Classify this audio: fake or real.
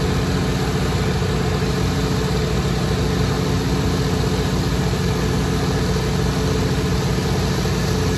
real